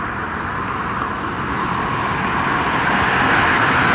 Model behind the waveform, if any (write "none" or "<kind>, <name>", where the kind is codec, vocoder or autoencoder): none